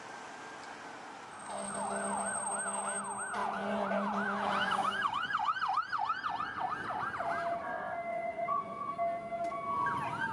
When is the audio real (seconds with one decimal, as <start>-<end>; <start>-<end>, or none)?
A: 0.0-3.4; 5.6-8.1; 8.9-10.3